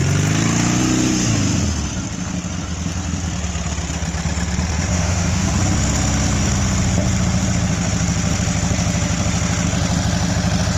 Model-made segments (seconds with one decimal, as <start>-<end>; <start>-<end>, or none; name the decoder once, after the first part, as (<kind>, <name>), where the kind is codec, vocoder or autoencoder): 4.9-5.5 (autoencoder, DAC-VAE)